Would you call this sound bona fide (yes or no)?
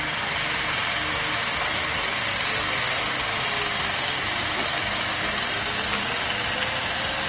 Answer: yes